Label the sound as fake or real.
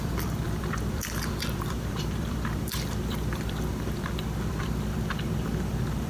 fake